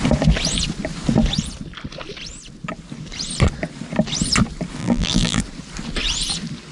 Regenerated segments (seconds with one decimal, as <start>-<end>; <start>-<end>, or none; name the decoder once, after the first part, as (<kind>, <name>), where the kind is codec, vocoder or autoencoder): 4.8-5.4 (vocoder, BigVGAN v2)